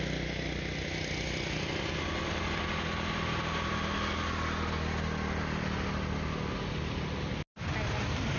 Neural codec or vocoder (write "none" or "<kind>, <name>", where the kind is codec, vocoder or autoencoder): none